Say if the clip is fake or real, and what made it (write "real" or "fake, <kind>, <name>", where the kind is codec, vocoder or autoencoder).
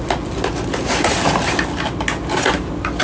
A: real